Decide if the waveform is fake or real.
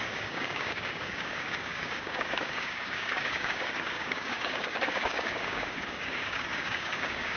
fake